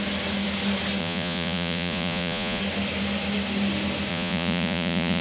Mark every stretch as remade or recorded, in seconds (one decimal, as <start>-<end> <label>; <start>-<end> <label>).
0.0-1.0 recorded; 1.0-2.6 remade; 2.6-4.1 recorded; 4.1-5.2 remade